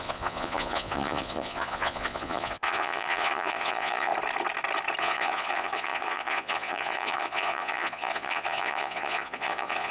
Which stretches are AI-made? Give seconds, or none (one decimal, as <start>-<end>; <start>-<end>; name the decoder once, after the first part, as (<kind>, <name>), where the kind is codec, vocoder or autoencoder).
0.0-4.1 (vocoder, Vocos); 5.0-9.9